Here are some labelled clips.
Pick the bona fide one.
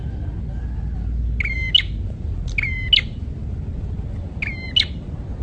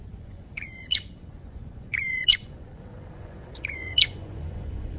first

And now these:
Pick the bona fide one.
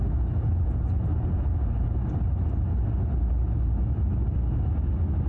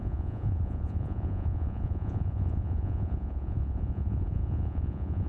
first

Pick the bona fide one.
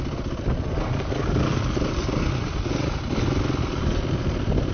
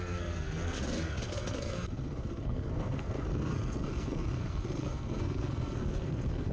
first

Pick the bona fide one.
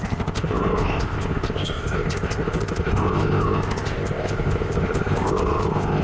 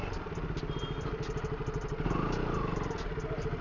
second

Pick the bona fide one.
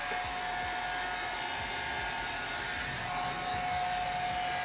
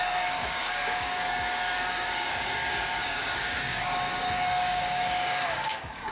first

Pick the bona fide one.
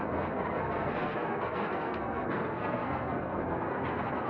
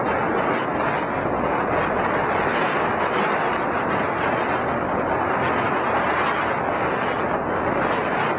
second